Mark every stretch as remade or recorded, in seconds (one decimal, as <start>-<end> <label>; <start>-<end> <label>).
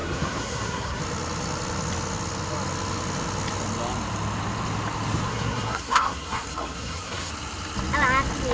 0.0-1.0 remade; 1.0-5.3 recorded; 5.3-7.3 remade; 7.3-8.5 recorded